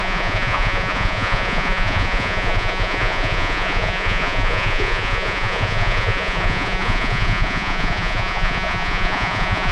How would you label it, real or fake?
fake